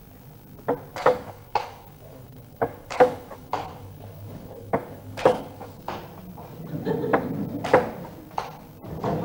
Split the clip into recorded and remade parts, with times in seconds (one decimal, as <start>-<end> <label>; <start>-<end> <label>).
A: 0.0-0.9 recorded; 0.9-5.9 remade; 5.9-9.2 recorded